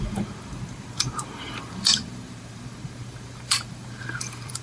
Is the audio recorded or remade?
remade